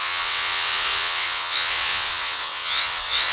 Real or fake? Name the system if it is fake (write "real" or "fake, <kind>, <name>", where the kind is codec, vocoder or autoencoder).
fake, vocoder, WaveNeXt